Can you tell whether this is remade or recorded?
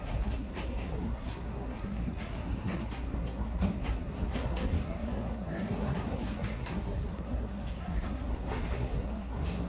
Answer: remade